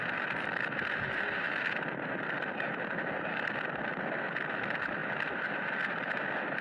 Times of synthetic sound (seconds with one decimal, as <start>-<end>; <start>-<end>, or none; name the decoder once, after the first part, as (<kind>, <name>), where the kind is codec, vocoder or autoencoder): none